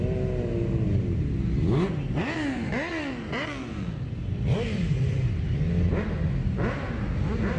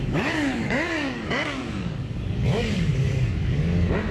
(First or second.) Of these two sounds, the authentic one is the first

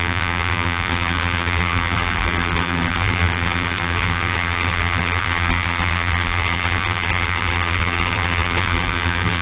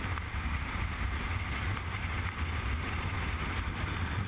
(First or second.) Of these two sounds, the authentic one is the second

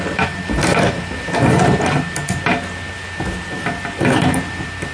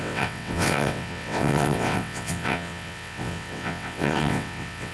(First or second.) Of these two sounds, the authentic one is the first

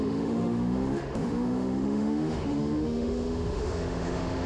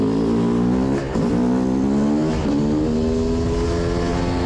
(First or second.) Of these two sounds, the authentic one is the second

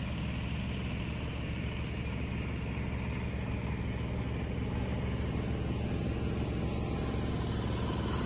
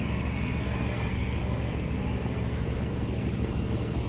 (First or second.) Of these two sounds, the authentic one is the first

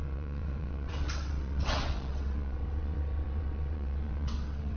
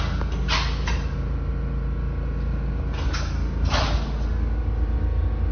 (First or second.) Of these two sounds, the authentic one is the second